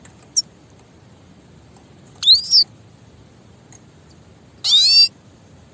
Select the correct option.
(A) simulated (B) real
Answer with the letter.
B